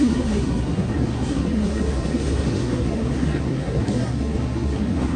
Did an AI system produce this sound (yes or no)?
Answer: yes